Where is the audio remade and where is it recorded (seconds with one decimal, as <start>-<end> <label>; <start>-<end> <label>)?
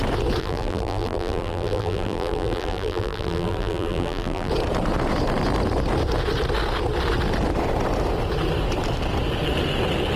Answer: 0.0-0.4 recorded; 0.4-4.5 remade; 4.5-10.2 recorded